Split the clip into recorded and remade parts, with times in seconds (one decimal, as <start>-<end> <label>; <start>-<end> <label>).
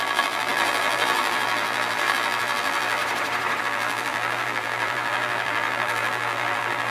0.0-3.0 remade; 3.0-3.6 recorded; 3.6-6.9 remade